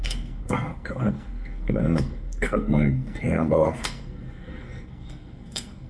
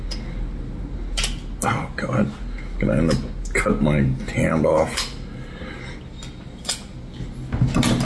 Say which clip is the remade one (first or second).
first